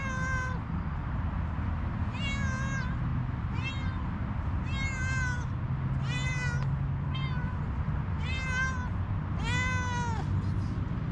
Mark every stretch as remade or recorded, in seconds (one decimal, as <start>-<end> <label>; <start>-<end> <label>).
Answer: 0.0-11.1 recorded